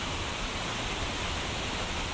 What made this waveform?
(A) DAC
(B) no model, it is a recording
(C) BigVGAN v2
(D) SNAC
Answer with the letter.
C